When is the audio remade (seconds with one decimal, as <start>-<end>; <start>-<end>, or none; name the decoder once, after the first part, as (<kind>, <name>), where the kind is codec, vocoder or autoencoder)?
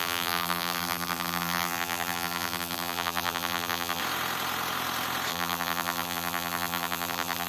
0.0-4.0 (vocoder, BigVGAN v2); 5.3-7.5